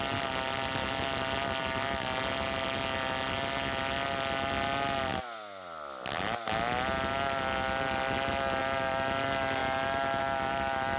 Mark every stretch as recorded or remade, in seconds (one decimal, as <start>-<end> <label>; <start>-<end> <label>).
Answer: 0.0-11.0 recorded